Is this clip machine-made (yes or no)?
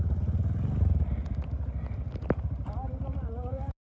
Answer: no